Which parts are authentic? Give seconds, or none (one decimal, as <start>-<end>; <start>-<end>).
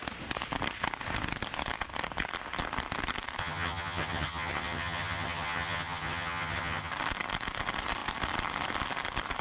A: 0.0-3.4; 6.9-9.4